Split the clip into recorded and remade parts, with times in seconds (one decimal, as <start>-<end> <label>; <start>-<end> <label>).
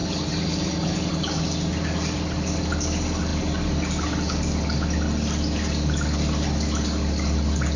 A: 0.0-7.8 recorded